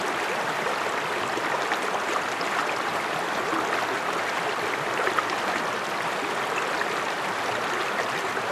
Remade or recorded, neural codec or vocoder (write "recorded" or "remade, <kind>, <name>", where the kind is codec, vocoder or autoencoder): recorded